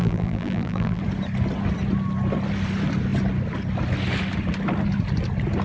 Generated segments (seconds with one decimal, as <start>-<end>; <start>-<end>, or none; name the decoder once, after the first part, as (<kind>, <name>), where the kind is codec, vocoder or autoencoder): 0.0-1.0 (vocoder, BigVGAN v2)